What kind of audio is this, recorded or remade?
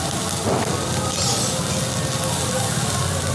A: recorded